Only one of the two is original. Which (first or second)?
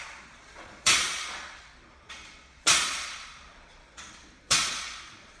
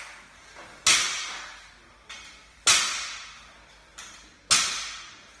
second